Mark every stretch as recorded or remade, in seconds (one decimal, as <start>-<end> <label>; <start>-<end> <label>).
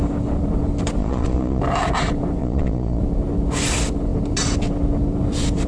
0.0-1.0 recorded; 1.0-1.6 remade; 1.6-2.4 recorded; 2.4-3.0 remade; 3.0-5.7 recorded